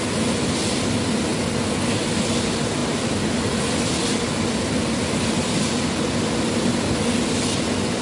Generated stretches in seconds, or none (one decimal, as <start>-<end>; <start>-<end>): none